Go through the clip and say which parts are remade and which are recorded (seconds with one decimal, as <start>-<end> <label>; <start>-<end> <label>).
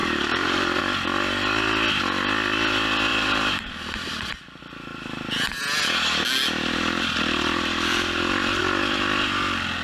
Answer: 0.0-0.8 remade; 0.8-3.1 recorded; 3.1-4.3 remade; 4.3-9.8 recorded